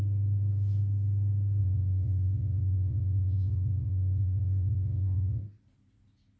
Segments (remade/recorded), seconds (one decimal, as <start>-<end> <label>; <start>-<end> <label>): 0.0-1.6 recorded; 1.6-5.4 remade; 5.4-6.4 recorded